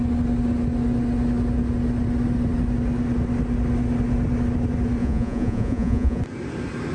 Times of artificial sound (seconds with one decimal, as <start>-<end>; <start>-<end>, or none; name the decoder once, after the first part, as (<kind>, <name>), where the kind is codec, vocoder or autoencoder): 5.0-6.2 (vocoder, Vocos)